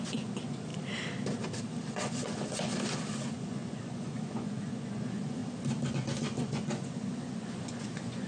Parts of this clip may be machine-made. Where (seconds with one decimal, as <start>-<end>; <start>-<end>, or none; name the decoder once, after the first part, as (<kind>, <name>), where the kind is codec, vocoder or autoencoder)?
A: 0.0-0.7 (vocoder, Vocos); 1.9-2.7; 3.3-5.4; 5.9-8.3